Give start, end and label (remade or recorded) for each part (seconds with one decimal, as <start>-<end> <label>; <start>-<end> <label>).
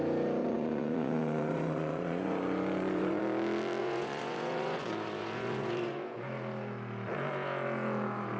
0.0-0.4 recorded; 0.4-3.2 remade; 3.2-3.8 recorded; 3.8-6.3 remade; 6.3-8.4 recorded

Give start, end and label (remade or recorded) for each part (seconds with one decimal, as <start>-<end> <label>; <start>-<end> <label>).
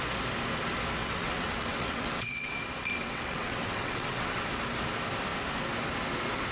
0.0-1.0 recorded; 1.0-2.5 remade; 2.5-3.0 recorded; 3.0-4.4 remade; 4.4-6.5 recorded